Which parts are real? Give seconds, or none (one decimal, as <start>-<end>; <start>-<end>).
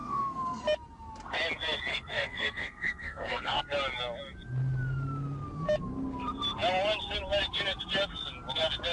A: 0.6-1.9; 3.6-8.9